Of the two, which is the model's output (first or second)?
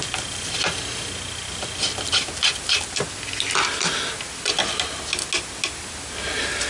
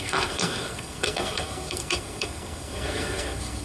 second